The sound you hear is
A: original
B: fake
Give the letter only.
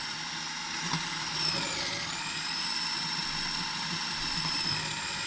A